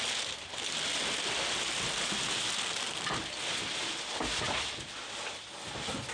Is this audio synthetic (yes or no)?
no